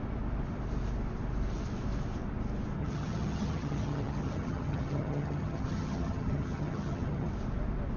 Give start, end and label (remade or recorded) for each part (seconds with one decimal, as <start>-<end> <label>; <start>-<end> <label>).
0.0-2.8 recorded; 2.8-7.3 remade; 7.3-8.0 recorded